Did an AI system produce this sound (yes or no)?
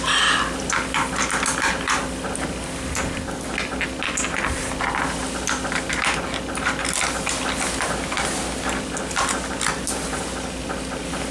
no